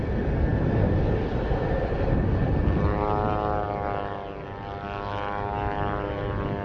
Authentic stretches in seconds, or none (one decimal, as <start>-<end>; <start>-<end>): 0.0-6.6